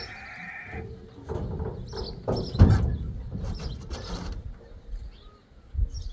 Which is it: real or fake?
real